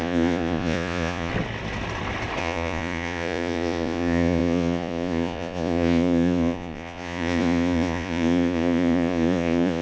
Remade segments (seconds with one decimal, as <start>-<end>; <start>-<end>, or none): 0.0-1.3; 2.4-9.8